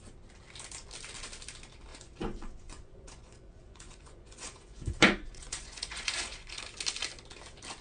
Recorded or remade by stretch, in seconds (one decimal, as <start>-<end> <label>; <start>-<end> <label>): 0.0-1.9 recorded; 1.9-6.6 remade; 6.6-7.8 recorded